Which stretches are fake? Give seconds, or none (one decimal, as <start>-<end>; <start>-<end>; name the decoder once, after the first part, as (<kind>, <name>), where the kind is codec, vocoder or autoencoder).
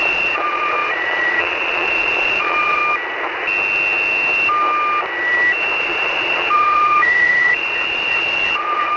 0.0-2.8 (vocoder, Vocos); 5.8-9.0